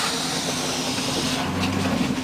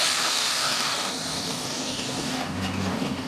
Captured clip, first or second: first